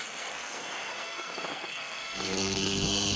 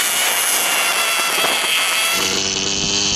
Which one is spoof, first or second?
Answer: first